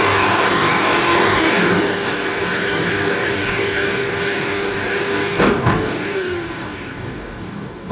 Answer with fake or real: fake